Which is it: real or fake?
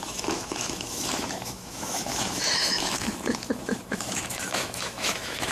fake